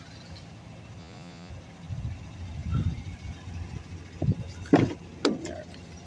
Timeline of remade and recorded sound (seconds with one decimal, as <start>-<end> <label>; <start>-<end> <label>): 0.0-1.0 recorded; 1.0-1.5 remade; 1.5-6.1 recorded